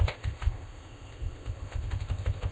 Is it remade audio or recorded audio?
remade